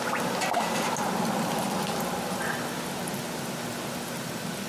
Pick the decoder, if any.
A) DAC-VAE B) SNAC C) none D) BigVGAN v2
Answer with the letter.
C